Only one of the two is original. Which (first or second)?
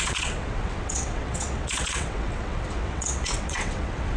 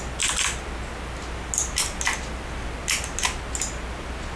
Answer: second